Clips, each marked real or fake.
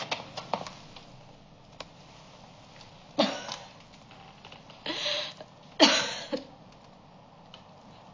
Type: real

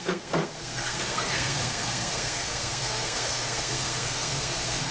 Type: fake